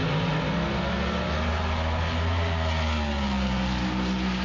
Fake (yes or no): no